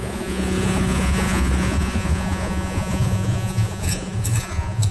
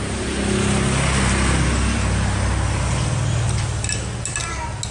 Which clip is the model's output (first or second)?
first